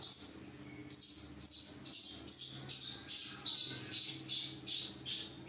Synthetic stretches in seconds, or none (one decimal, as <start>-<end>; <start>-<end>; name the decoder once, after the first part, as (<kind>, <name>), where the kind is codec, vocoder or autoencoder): none